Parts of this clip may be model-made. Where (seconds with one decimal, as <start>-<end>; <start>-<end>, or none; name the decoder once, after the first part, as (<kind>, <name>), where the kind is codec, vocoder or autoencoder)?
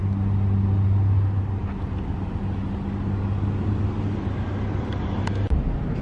none